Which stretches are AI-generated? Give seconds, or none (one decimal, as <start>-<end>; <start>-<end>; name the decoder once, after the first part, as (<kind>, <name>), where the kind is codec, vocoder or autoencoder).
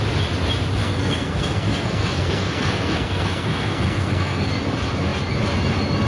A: 0.8-4.5 (codec, SNAC)